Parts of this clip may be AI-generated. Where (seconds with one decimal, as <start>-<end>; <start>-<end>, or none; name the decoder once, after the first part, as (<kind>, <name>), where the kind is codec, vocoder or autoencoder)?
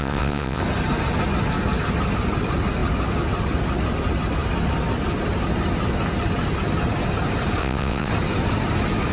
0.0-0.6 (vocoder, WaveNeXt); 7.6-8.1